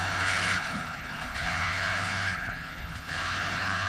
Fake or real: fake